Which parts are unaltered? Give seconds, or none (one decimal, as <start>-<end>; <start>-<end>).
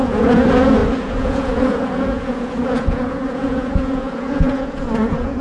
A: none